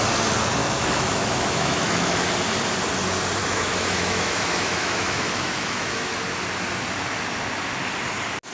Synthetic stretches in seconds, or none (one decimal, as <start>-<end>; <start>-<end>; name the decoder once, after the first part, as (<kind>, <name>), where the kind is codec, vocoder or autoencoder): 0.6-2.3 (autoencoder, DAC-VAE); 3.4-6.2